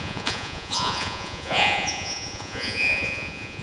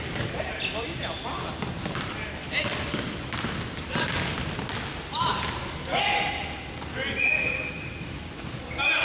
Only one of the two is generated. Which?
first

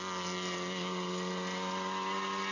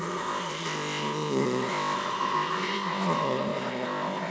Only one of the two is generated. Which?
second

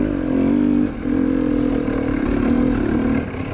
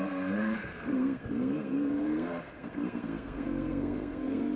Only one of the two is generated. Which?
second